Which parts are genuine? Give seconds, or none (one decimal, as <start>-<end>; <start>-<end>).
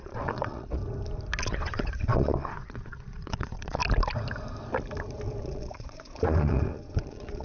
0.8-1.4; 3.8-5.4